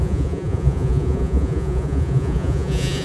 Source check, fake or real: fake